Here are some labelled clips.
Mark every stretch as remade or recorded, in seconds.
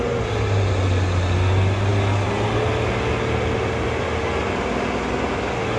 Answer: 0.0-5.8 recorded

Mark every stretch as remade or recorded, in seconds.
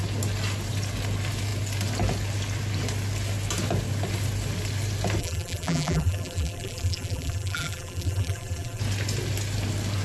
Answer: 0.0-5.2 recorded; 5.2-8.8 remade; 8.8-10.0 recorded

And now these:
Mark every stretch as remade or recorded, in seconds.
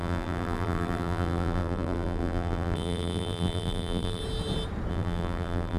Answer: 0.0-4.2 remade; 4.2-4.9 recorded; 4.9-5.8 remade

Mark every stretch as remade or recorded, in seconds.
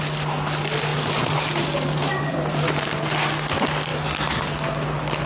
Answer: 0.0-2.0 recorded; 2.0-2.9 remade; 2.9-5.3 recorded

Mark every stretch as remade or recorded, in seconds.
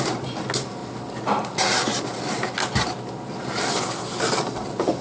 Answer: 0.0-5.0 recorded